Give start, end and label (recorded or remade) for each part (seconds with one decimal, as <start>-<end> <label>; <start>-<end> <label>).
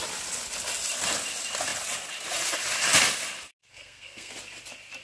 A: 0.0-3.6 recorded; 3.6-4.3 remade; 4.3-5.0 recorded